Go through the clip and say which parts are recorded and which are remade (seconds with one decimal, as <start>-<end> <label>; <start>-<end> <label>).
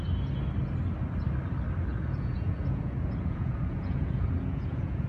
0.0-1.9 recorded; 1.9-5.1 remade